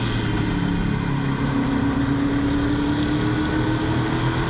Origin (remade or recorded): recorded